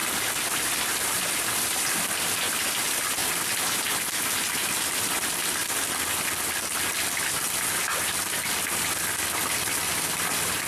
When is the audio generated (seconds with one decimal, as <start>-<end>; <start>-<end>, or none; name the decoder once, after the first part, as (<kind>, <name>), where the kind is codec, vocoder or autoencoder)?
0.7-5.6 (vocoder, BigVGAN v2); 6.9-10.7